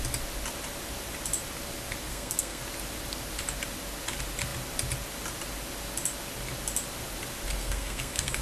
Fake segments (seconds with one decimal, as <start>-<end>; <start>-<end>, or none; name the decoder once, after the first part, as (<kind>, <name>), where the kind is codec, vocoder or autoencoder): 2.1-2.6 (codec, SNAC); 7.6-8.4